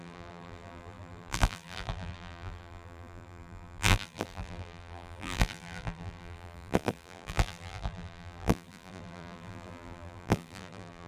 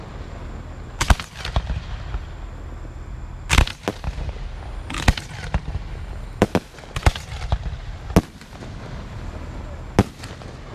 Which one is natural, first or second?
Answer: second